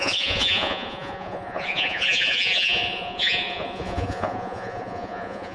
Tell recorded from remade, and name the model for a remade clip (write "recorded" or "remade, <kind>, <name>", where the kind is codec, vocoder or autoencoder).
remade, vocoder, Vocos